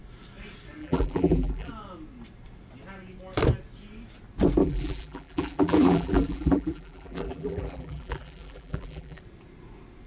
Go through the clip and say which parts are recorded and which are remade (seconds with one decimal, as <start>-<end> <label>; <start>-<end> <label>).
0.0-0.8 recorded; 0.8-1.7 remade; 1.7-4.6 recorded; 4.6-9.2 remade; 9.2-10.1 recorded